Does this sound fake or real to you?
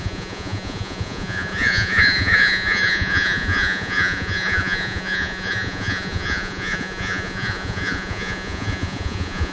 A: fake